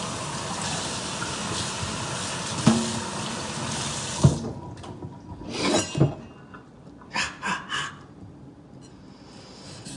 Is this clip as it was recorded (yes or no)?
yes